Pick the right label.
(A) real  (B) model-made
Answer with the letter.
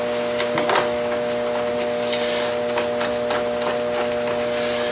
A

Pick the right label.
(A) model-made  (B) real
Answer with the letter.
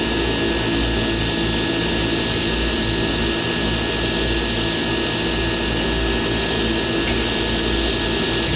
B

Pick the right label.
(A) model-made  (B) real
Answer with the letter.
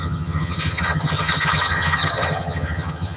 A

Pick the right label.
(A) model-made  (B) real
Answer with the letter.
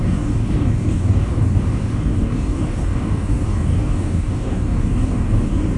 A